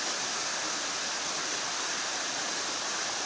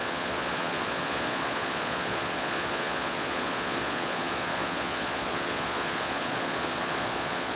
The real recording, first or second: first